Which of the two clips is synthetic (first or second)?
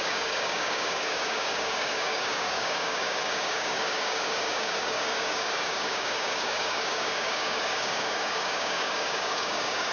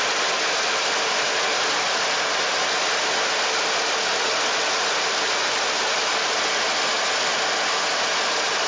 first